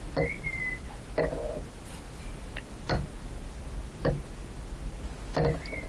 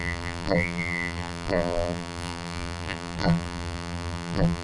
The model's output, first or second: second